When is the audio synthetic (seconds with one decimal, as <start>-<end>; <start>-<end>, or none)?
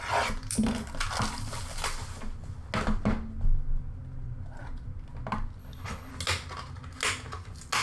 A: 5.6-6.1